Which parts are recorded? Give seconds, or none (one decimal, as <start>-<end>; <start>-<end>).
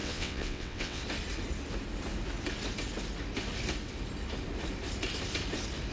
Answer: 1.0-5.9